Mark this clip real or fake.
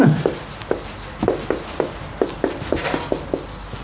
real